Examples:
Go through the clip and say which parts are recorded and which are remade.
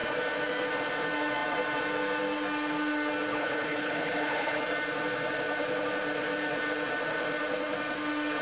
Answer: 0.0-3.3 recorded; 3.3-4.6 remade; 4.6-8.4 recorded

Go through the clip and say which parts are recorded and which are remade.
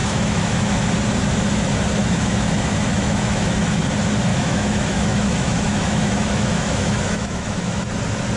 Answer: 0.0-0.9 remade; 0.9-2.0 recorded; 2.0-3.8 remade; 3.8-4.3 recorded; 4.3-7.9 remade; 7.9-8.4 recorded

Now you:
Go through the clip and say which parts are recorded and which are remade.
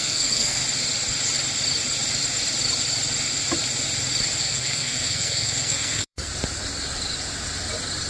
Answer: 0.0-0.6 remade; 0.6-4.4 recorded; 4.4-6.3 remade; 6.3-8.1 recorded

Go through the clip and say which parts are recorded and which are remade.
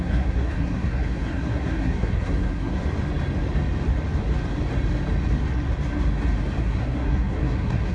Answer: 0.0-2.8 remade; 2.8-6.6 recorded; 6.6-7.9 remade